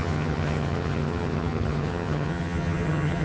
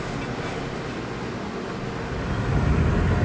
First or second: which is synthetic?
first